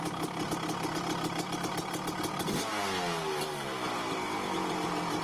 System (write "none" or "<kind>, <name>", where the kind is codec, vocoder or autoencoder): none